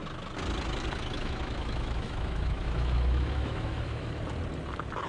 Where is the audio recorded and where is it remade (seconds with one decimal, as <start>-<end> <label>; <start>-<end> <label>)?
0.0-1.2 recorded; 1.2-4.2 remade; 4.2-5.1 recorded